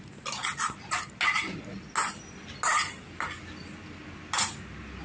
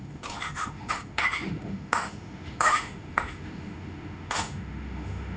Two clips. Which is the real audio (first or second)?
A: first